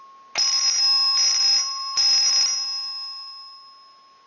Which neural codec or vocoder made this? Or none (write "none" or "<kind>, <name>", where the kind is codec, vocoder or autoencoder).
none